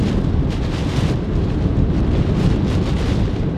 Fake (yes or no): no